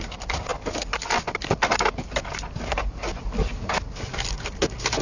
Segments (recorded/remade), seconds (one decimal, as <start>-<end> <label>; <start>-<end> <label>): 0.0-5.0 recorded